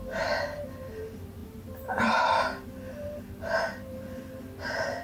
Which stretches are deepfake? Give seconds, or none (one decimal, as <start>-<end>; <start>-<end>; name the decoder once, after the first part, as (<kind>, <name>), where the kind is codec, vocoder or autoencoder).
none